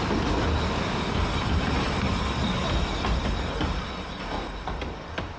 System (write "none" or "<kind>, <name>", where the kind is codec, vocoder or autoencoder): none